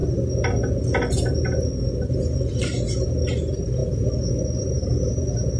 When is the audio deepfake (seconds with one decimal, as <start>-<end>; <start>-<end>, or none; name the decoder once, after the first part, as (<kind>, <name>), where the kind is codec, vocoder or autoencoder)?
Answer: none